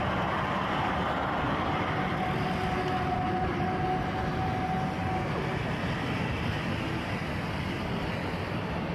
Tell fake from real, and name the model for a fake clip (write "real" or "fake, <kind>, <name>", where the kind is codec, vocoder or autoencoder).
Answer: real